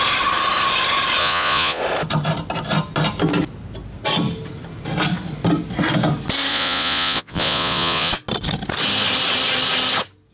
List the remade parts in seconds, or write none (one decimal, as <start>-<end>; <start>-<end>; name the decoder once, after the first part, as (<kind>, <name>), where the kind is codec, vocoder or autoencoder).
1.2-1.8 (vocoder, Vocos); 6.5-8.1